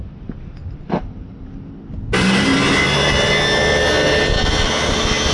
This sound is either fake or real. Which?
real